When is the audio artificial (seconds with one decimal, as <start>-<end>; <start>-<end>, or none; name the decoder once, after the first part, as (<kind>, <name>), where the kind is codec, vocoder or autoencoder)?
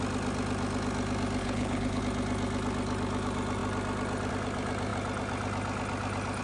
1.4-2.0 (codec, HILCodec)